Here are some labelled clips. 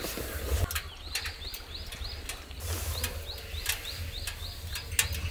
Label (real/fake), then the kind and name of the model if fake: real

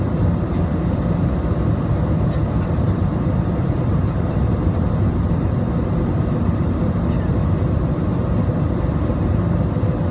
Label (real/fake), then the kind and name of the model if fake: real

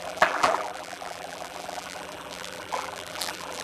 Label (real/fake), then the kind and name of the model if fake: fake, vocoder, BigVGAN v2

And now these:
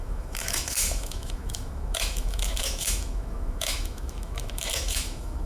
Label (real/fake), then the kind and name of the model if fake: fake, autoencoder, DAC-VAE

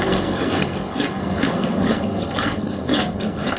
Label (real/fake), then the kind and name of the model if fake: fake, codec, SNAC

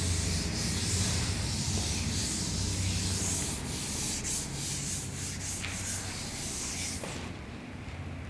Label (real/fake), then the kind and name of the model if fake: real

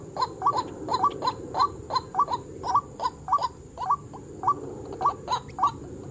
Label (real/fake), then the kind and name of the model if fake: real